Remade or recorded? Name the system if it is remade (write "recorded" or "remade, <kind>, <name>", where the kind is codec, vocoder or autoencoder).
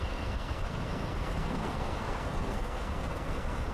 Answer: remade, codec, SNAC